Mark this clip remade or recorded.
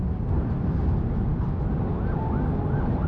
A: recorded